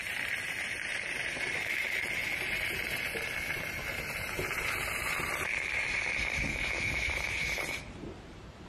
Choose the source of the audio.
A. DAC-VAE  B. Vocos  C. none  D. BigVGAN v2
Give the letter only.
D